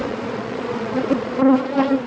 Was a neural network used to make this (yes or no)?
yes